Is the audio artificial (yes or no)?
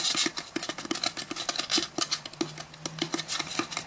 no